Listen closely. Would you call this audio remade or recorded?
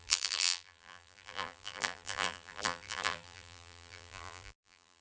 remade